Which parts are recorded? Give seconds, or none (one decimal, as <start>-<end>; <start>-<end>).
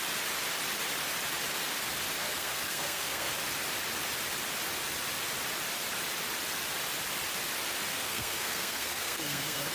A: 0.0-2.2; 3.3-7.9